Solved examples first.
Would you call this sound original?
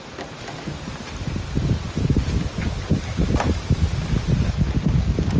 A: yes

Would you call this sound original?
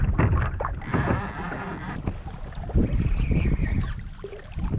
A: yes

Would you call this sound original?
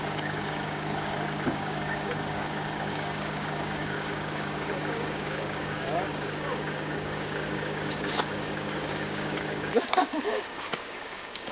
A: no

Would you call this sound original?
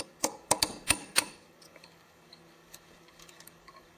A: no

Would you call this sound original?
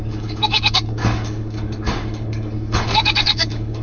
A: no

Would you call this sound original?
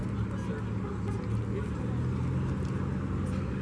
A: yes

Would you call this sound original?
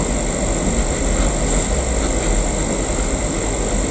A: yes